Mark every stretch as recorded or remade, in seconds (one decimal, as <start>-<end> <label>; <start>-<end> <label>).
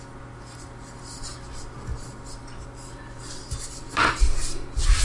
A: 0.0-5.0 recorded